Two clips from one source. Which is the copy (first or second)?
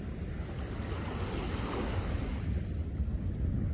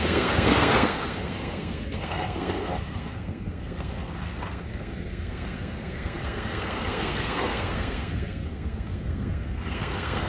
second